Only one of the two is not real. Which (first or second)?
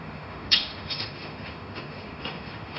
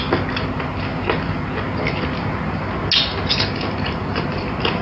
first